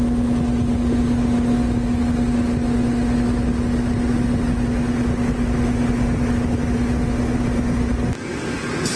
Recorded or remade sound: recorded